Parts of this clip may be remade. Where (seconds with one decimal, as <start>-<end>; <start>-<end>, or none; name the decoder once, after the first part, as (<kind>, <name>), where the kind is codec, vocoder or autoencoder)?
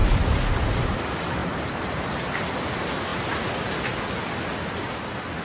0.0-0.5 (vocoder, BigVGAN v2); 1.4-2.0